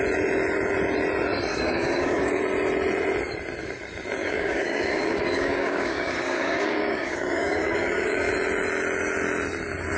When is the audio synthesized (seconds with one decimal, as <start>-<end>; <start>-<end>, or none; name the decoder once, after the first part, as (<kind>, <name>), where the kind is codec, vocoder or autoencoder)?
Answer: 1.5-2.4 (codec, DAC); 4.2-8.3